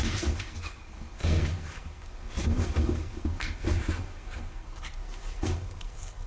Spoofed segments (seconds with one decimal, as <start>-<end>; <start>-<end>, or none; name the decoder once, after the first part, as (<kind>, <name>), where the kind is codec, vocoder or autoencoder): 0.0-6.3 (codec, SNAC)